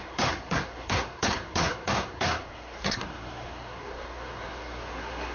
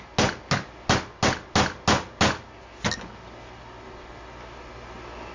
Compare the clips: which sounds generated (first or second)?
first